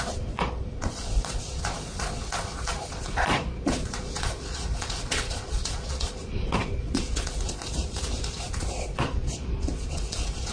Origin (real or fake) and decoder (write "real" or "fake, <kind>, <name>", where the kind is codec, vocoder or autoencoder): fake, vocoder, Vocos